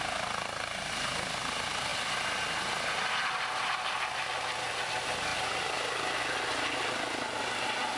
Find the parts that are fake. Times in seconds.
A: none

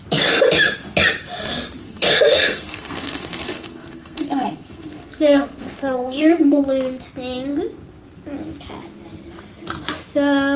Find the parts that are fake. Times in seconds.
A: 1.8-6.6 (codec, SNAC)